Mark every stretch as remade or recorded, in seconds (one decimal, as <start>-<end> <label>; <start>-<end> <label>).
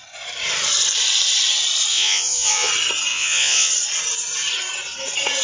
0.0-1.9 recorded; 1.9-2.7 remade; 2.7-3.1 recorded; 3.1-3.7 remade; 3.7-5.4 recorded